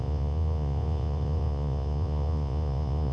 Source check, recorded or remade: remade